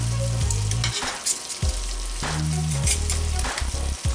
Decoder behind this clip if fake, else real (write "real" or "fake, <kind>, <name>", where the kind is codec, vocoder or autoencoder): real